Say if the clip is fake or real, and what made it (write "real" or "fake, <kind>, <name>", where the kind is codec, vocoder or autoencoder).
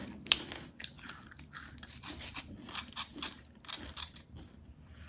fake, vocoder, BigVGAN v2